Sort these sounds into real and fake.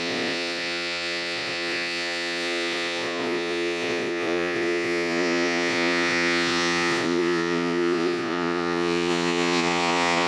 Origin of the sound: fake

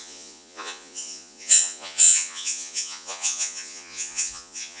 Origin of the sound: fake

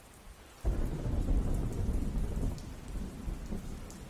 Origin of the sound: real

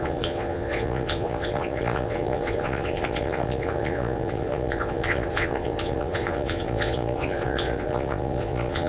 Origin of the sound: fake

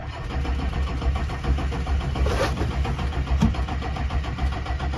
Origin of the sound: real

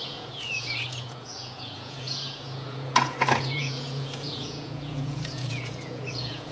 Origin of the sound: fake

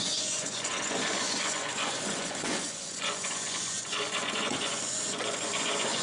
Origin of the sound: fake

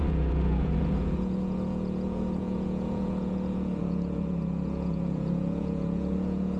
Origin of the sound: fake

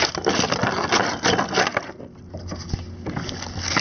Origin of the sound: real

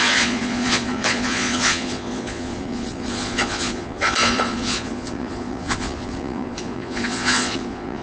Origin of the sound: fake